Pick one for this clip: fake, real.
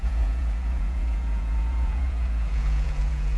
fake